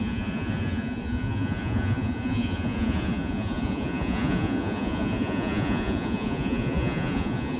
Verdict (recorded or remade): remade